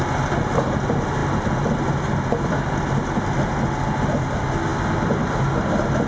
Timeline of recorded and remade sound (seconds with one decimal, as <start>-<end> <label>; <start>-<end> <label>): 0.0-6.1 recorded